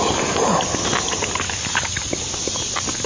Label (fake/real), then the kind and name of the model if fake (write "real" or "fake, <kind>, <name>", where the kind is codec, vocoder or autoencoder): real